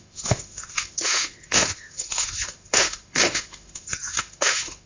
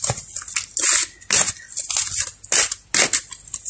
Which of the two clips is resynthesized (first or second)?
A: first